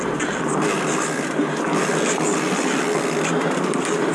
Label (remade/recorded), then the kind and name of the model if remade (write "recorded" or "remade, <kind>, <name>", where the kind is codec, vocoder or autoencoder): recorded